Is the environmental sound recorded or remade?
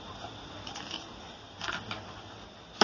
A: recorded